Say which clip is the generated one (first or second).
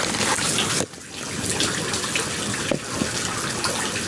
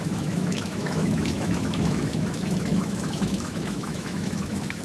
second